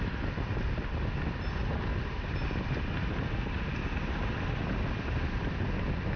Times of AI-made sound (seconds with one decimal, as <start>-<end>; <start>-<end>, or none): none